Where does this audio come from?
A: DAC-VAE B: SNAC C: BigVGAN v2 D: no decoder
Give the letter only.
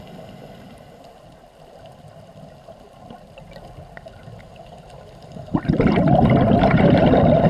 D